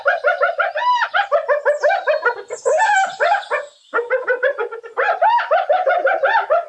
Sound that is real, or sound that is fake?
real